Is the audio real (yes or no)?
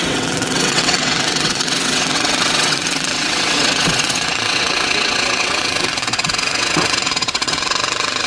no